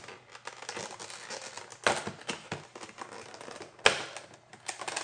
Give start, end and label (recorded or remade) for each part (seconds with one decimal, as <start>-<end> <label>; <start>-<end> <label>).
0.0-5.0 recorded